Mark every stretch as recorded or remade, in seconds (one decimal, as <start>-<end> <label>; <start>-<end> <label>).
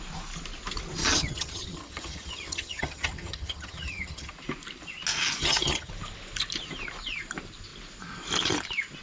0.0-1.0 recorded; 1.0-4.3 remade; 4.3-5.4 recorded; 5.4-5.9 remade; 5.9-9.0 recorded